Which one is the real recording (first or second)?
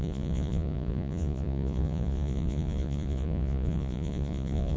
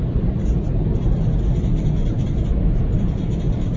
second